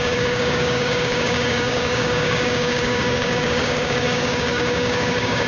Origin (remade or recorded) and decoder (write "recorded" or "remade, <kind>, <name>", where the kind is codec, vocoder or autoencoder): remade, codec, DAC